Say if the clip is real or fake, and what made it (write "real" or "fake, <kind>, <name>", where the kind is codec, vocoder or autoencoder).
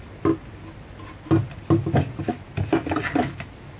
real